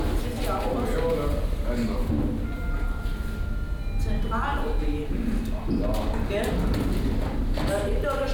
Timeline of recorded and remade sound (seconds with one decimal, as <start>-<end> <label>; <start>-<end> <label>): 0.0-4.5 recorded; 4.5-5.1 remade; 5.1-8.3 recorded